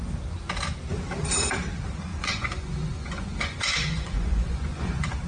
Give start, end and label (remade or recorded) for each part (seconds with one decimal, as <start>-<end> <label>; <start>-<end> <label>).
0.0-2.1 recorded; 2.1-5.3 remade